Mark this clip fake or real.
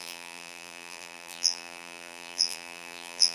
fake